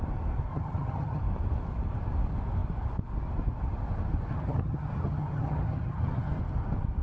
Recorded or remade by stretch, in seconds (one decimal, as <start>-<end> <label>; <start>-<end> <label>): 0.0-0.5 recorded; 0.5-1.2 remade; 1.2-4.3 recorded; 4.3-6.4 remade; 6.4-7.0 recorded